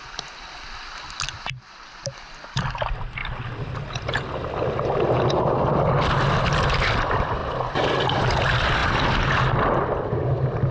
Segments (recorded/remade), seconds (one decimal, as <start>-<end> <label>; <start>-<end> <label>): 0.0-10.7 recorded